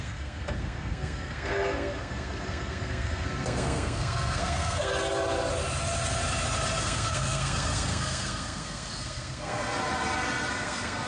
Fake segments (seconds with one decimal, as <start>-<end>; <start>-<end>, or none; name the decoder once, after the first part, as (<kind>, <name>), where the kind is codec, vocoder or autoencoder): 0.0-4.9 (codec, SNAC); 6.8-9.8; 10.5-11.1